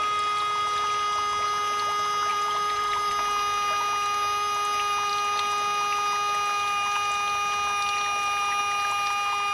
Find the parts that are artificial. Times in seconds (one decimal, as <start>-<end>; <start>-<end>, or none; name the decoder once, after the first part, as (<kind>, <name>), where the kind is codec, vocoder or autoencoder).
2.3-3.1 (vocoder, BigVGAN v2)